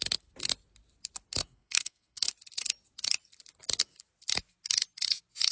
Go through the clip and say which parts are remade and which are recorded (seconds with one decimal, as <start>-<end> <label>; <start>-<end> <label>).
0.0-1.4 recorded; 1.4-2.3 remade; 2.3-5.5 recorded